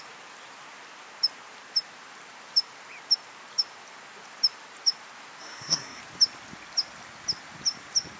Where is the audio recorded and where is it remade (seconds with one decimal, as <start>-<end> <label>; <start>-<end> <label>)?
0.0-5.4 recorded; 5.4-6.0 remade; 6.0-8.2 recorded